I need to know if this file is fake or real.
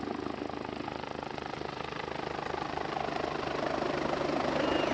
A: real